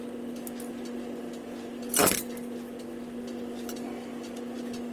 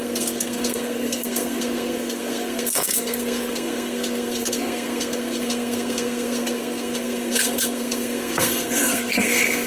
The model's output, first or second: second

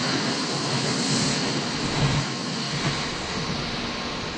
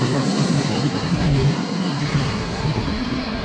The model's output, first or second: second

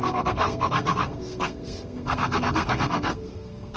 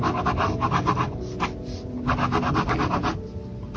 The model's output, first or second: first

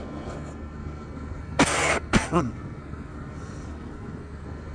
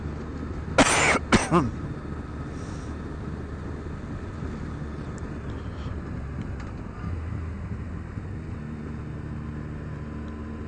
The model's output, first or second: first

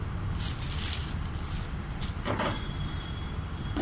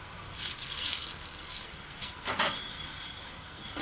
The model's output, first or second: second